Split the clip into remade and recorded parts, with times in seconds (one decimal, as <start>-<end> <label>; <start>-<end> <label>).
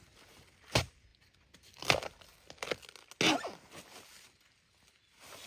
0.0-5.5 recorded